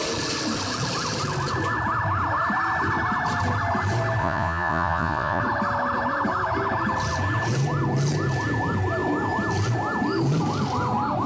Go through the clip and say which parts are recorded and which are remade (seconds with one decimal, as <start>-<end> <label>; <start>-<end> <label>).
0.0-4.2 recorded; 4.2-5.4 remade; 5.4-11.3 recorded